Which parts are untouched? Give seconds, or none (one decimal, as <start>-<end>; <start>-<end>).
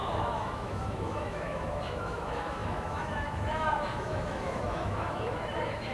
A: none